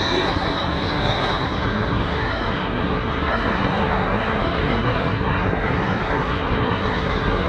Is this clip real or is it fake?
fake